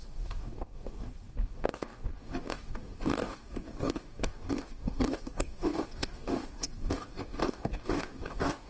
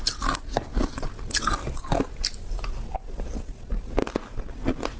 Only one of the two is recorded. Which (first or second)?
second